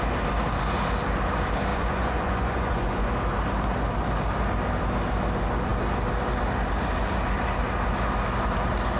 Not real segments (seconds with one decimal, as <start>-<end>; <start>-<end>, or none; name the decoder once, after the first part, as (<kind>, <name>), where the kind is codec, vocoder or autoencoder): 1.7-3.1 (vocoder, Vocos)